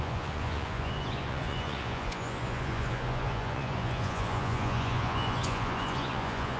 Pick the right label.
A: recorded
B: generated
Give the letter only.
B